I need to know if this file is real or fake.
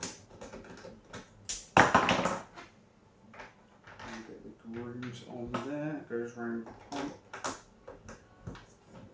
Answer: real